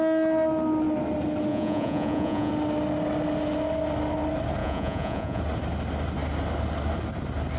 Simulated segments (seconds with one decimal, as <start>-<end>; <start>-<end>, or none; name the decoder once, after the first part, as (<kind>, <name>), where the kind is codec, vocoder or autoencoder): 1.5-2.5 (vocoder, Vocos); 4.6-5.4